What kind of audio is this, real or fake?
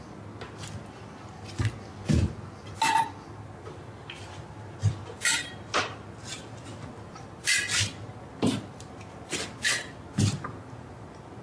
real